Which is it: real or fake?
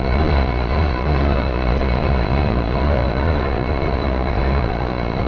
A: fake